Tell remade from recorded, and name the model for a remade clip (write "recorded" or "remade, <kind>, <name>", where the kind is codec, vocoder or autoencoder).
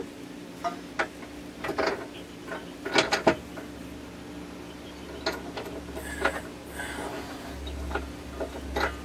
recorded